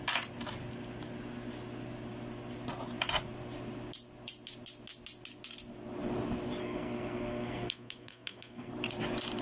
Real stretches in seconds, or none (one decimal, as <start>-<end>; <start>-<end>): 0.0-6.6; 8.7-9.4